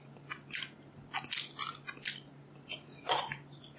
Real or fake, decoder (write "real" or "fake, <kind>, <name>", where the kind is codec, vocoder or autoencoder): real